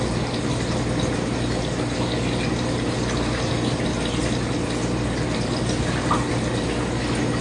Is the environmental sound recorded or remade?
recorded